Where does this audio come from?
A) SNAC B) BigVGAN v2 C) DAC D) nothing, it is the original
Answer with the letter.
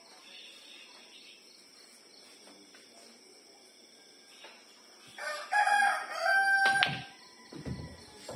D